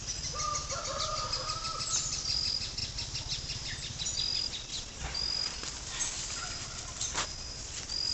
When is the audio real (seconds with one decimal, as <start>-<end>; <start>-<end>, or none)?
0.0-8.1